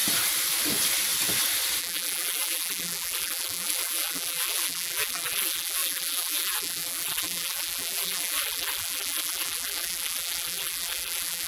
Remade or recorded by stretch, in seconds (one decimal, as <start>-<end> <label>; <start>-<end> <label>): 0.0-1.8 recorded; 1.8-11.5 remade